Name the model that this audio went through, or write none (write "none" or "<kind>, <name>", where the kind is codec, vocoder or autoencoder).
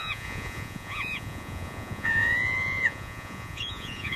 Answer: vocoder, Vocos